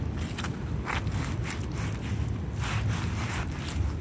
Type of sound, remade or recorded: recorded